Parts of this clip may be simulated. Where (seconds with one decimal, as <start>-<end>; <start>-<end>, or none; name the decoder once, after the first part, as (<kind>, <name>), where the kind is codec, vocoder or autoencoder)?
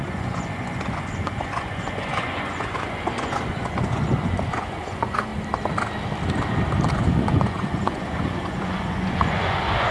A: 0.0-5.3 (vocoder, Vocos); 6.9-9.9